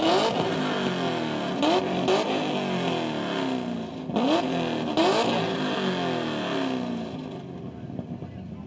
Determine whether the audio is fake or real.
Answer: real